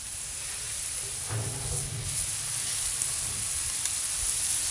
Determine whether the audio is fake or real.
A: real